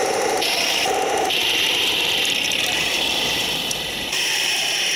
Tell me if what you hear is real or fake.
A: fake